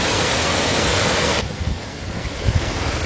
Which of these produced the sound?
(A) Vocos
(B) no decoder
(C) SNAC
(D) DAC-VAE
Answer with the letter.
C